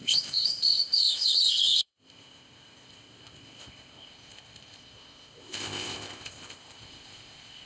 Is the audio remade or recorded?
remade